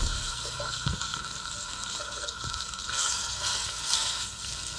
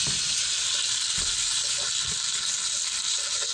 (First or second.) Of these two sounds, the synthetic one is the first